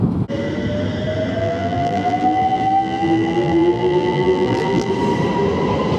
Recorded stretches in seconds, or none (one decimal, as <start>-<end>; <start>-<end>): 0.0-1.4; 4.9-6.0